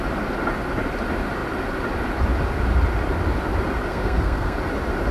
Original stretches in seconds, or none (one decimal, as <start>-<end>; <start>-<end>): 0.0-3.9; 4.6-5.1